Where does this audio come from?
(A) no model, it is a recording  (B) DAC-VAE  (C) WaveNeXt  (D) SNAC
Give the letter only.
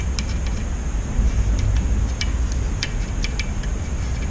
A